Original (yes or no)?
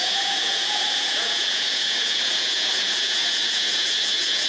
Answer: no